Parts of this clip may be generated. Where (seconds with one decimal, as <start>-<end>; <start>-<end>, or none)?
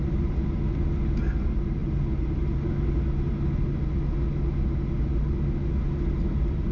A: 0.0-0.6